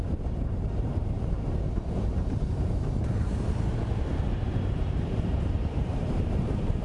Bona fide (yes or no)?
no